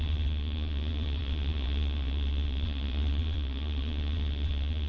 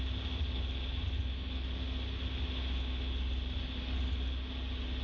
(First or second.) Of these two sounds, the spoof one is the first